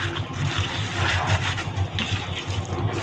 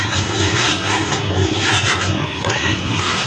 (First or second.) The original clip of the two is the first